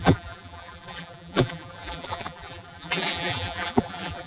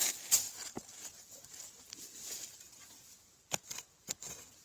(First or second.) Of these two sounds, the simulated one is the first